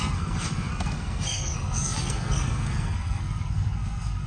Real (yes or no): no